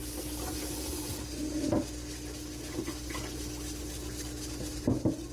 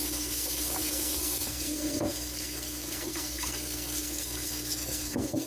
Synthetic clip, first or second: second